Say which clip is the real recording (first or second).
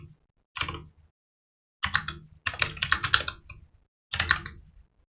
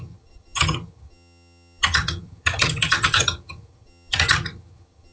first